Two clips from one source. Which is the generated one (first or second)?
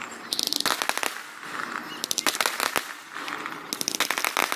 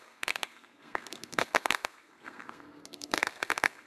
second